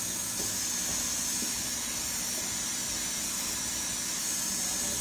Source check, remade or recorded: recorded